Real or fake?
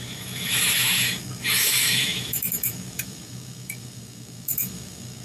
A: fake